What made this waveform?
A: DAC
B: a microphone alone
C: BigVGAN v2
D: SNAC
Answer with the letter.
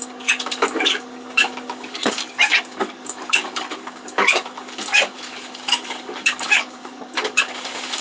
A